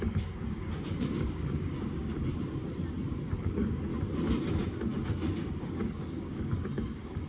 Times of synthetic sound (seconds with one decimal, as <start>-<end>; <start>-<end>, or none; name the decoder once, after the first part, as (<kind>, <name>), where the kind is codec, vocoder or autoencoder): 0.0-2.3 (codec, DAC); 3.4-3.9; 4.5-7.3